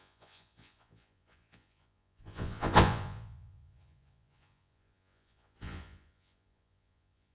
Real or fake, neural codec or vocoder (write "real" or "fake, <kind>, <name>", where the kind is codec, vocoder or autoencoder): fake, vocoder, Vocos